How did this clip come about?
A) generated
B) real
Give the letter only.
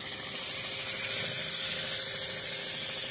B